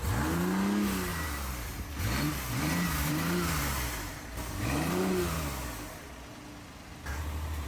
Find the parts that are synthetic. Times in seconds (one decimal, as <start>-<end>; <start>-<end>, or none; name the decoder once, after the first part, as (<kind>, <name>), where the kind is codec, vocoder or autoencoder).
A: 1.1-5.4 (vocoder, BigVGAN v2); 7.1-7.7